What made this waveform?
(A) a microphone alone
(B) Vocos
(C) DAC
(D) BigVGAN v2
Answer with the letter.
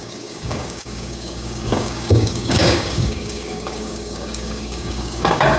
C